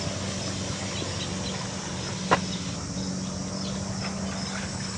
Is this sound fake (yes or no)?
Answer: no